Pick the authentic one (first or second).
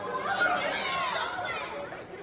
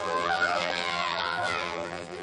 first